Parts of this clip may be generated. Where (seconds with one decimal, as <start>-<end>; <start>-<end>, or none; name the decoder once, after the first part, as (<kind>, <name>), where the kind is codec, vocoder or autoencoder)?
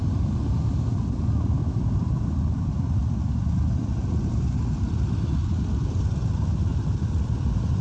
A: 1.6-4.3 (vocoder, BigVGAN v2); 6.7-7.8